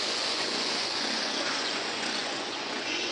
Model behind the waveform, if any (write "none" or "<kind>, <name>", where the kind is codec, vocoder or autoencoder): vocoder, Vocos